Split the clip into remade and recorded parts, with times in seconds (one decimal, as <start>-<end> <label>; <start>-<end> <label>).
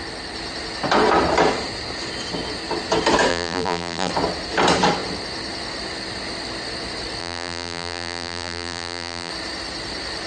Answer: 0.0-3.3 recorded; 3.3-4.1 remade; 4.1-7.2 recorded; 7.2-9.3 remade; 9.3-10.3 recorded